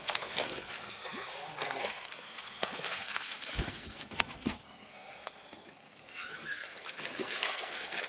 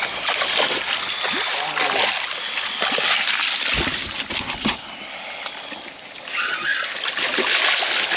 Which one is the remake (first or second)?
first